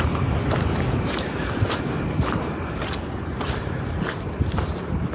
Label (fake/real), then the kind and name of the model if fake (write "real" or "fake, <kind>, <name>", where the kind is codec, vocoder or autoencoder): fake, vocoder, BigVGAN v2